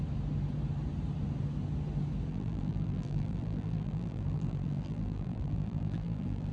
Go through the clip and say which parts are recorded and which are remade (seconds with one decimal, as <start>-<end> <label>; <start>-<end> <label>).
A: 0.0-2.3 recorded; 2.3-6.5 remade